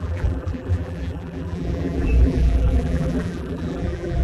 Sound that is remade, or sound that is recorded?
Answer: remade